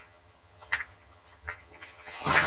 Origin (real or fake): fake